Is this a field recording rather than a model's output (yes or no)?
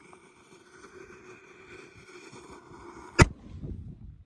yes